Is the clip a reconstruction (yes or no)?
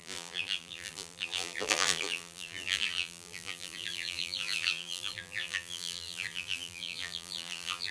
yes